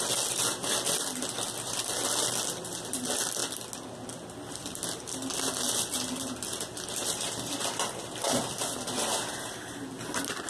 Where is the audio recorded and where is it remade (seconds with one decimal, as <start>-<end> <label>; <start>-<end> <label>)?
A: 0.0-3.4 remade; 3.4-4.4 recorded; 4.4-10.5 remade